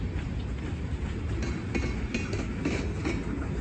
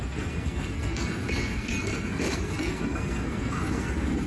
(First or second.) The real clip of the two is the first